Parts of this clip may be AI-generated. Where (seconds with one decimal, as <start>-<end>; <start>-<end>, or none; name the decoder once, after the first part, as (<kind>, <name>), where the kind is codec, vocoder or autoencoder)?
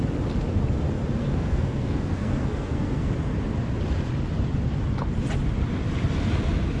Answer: 1.2-3.1 (codec, SNAC)